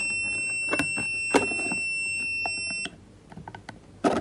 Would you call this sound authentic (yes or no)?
yes